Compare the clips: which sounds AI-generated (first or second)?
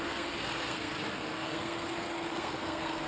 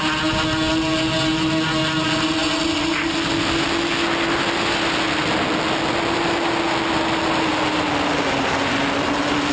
first